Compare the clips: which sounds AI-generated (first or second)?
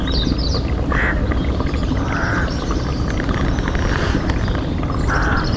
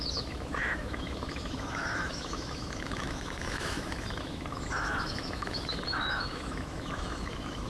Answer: second